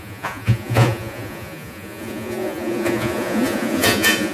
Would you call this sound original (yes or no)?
no